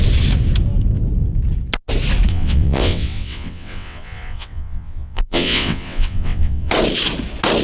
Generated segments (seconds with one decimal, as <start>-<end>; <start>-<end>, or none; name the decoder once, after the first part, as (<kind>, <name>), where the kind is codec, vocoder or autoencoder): 2.3-6.7 (vocoder, WaveNeXt)